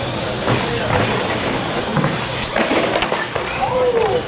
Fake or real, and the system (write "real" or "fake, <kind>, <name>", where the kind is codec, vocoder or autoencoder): real